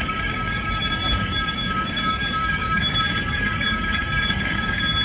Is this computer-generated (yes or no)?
yes